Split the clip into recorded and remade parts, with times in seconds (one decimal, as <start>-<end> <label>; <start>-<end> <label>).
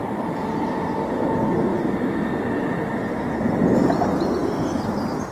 0.0-1.0 remade; 1.0-4.4 recorded; 4.4-5.3 remade